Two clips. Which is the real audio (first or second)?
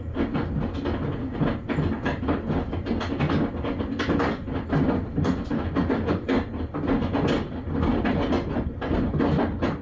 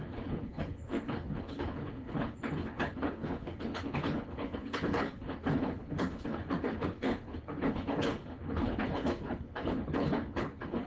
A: first